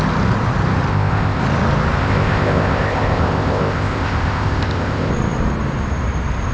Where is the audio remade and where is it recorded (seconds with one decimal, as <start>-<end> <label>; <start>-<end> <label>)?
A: 0.0-0.9 recorded; 0.9-1.4 remade; 1.4-2.0 recorded; 2.0-5.1 remade; 5.1-6.5 recorded